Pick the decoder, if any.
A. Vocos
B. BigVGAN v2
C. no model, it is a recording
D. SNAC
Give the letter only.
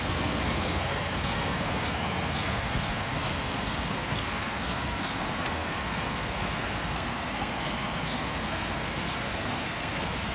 D